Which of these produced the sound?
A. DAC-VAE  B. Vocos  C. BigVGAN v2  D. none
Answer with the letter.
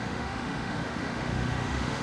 A